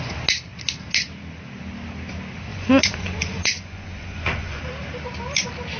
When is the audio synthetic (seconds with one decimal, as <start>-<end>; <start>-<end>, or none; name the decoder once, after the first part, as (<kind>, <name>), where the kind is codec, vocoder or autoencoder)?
2.5-4.6 (vocoder, Vocos)